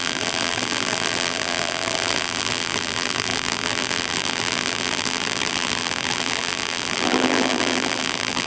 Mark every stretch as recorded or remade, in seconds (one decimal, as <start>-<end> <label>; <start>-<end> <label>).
0.0-8.5 remade